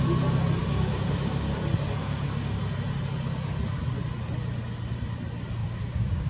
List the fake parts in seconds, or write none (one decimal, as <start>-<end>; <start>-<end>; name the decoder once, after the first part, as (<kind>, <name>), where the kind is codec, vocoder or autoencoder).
0.6-1.6 (codec, DAC); 2.0-2.6; 5.6-6.3